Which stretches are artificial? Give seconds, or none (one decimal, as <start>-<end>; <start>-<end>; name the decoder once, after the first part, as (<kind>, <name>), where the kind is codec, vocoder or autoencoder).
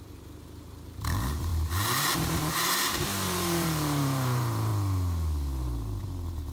0.0-1.5 (vocoder, BigVGAN v2); 2.0-4.7; 6.0-6.5